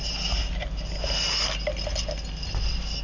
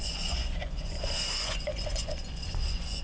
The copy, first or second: second